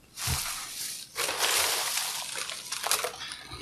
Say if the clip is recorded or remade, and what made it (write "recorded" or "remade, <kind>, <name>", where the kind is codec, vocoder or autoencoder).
recorded